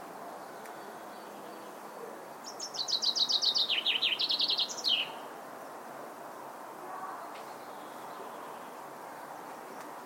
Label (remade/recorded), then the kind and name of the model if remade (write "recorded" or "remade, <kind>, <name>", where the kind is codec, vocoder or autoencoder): recorded